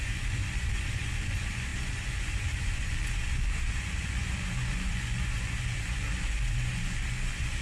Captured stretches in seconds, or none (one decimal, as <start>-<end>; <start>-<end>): none